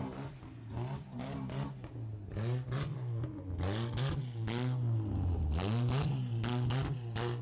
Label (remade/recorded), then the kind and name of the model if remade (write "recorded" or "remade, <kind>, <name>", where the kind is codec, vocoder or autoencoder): recorded